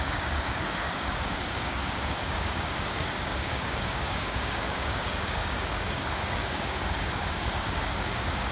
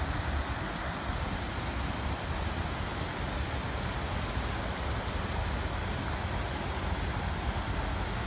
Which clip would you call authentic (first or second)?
second